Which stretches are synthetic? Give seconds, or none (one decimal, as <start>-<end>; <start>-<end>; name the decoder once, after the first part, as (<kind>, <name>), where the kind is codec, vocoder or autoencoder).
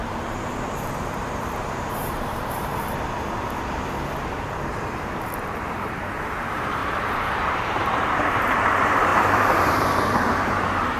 0.0-2.7 (vocoder, BigVGAN v2); 5.6-6.8; 7.5-11.0